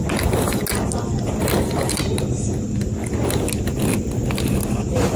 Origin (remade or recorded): recorded